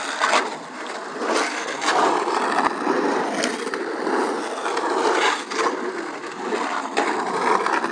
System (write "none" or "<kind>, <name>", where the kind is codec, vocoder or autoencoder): none